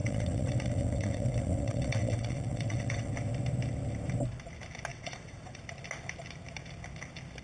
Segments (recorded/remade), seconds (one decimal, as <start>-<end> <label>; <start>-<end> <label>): 0.0-3.1 remade; 3.1-4.9 recorded; 4.9-5.6 remade; 5.6-7.4 recorded